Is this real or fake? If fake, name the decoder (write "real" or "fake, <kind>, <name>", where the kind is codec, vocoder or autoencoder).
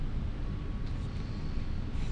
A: real